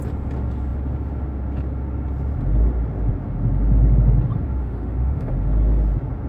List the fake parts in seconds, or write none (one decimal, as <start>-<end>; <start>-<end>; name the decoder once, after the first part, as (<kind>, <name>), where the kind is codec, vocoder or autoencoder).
4.6-5.3 (autoencoder, DAC-VAE)